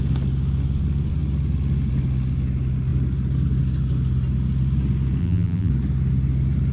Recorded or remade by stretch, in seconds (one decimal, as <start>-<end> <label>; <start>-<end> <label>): 0.0-5.2 recorded; 5.2-5.7 remade; 5.7-6.7 recorded